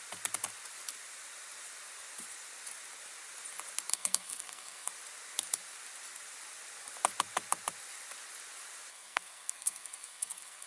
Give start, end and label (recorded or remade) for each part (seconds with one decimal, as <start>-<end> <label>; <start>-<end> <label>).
0.0-3.9 recorded; 3.9-4.9 remade; 4.9-8.9 recorded; 8.9-10.7 remade